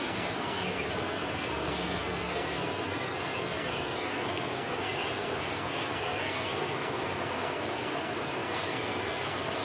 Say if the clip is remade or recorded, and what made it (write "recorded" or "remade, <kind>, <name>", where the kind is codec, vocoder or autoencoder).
remade, codec, SNAC